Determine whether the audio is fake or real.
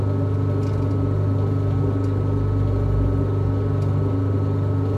real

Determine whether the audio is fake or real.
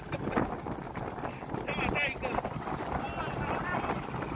real